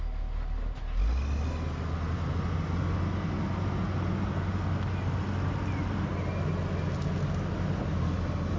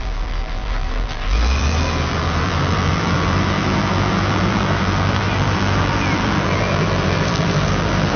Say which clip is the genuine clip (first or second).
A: first